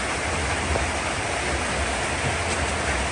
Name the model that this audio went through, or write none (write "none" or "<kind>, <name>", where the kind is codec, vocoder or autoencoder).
none